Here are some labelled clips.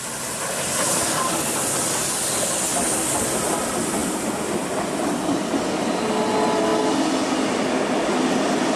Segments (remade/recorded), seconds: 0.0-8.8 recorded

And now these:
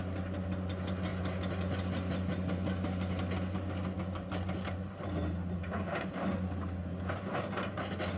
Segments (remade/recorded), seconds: 0.0-8.2 recorded

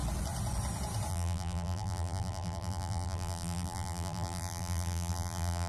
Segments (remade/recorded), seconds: 0.0-1.1 recorded; 1.1-5.7 remade